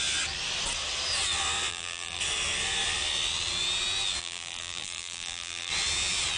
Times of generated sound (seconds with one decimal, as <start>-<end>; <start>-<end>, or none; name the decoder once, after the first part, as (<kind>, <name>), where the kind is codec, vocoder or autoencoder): 1.7-2.2 (vocoder, BigVGAN v2); 4.2-5.7